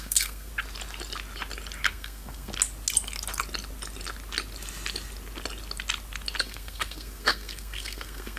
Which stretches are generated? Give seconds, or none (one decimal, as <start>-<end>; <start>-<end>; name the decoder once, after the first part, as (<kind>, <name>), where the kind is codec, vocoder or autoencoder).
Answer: 0.0-0.5 (codec, SNAC); 1.9-2.5; 6.4-8.4